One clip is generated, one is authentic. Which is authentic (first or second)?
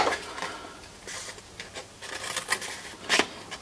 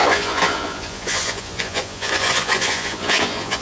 first